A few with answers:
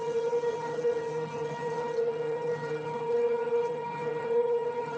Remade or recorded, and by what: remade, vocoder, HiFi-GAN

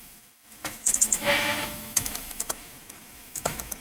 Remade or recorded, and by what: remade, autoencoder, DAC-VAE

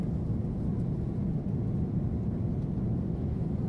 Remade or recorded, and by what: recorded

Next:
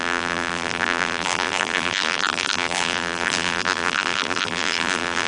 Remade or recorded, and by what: remade, vocoder, BigVGAN v2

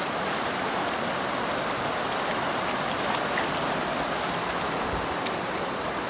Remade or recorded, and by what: recorded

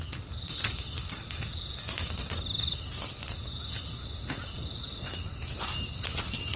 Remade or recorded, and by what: recorded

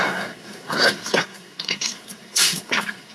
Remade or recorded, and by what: remade, codec, SNAC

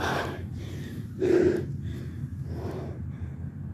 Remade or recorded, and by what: remade, vocoder, BigVGAN v2